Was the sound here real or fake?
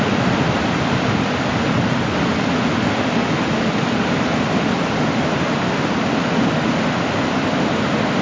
real